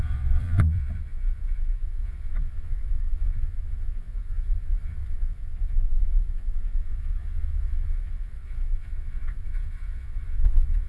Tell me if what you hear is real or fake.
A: fake